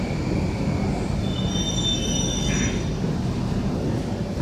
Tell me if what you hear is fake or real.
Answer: real